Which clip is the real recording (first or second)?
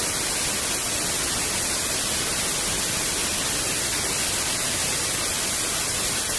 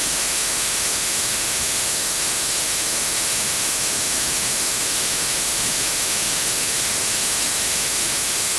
first